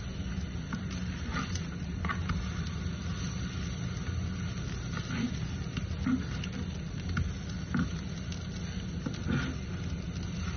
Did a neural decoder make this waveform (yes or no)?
no